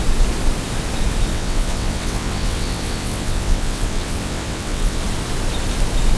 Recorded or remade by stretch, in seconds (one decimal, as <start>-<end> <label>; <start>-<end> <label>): 0.0-1.3 recorded; 1.3-5.0 remade; 5.0-6.2 recorded